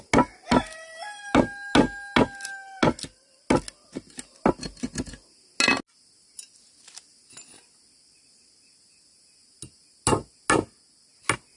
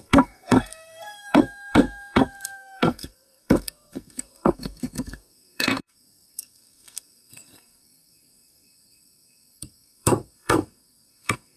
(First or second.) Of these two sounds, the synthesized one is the second